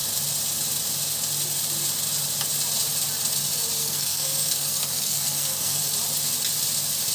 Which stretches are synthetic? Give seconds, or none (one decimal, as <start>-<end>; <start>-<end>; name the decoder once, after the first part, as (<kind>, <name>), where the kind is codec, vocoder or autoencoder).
3.8-5.8 (codec, SNAC)